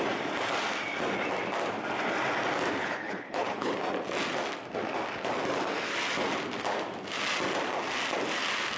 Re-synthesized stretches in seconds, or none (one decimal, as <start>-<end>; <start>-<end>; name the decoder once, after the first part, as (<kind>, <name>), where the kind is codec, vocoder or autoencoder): 2.8-3.7 (codec, HILCodec)